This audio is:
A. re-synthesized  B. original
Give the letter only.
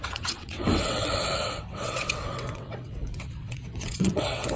A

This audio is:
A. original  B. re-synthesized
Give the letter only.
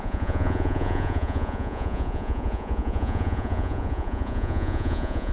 B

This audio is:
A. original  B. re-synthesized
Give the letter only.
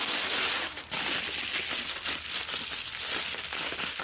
A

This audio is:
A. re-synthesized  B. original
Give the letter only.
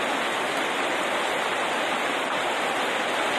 B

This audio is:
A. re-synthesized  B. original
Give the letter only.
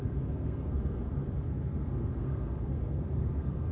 A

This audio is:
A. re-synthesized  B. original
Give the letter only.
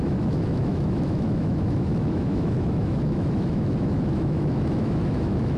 A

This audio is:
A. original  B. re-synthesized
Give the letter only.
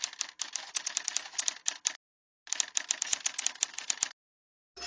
A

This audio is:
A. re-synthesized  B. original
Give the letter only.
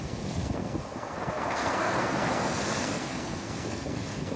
A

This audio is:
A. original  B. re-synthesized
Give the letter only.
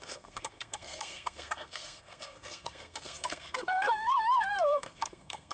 B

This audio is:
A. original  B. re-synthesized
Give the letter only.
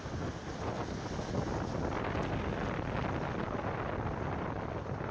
A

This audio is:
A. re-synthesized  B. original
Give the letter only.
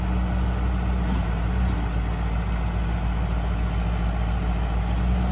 B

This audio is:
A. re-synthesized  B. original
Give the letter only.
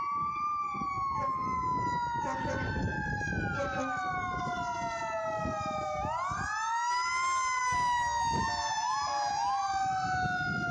B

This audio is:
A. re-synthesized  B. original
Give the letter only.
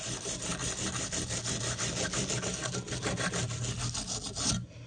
B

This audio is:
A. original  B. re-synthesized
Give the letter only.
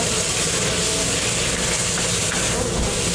A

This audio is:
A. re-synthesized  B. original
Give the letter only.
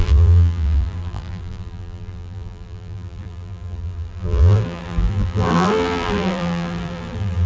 A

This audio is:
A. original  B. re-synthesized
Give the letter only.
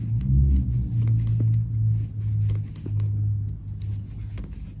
A